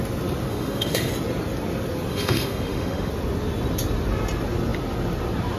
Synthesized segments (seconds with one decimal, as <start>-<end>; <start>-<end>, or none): 0.5-1.1; 2.1-3.1